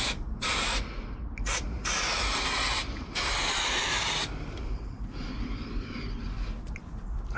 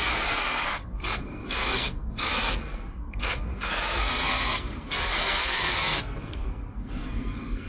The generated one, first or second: second